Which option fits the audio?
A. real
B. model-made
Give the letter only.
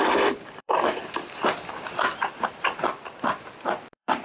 B